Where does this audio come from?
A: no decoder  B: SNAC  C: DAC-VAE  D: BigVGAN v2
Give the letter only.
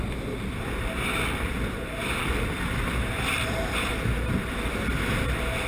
A